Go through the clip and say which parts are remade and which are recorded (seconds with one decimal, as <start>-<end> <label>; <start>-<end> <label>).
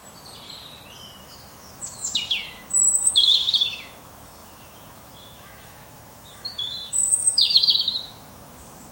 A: 0.0-1.2 recorded; 1.2-8.9 remade